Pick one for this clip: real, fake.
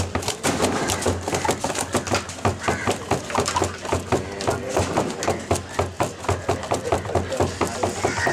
real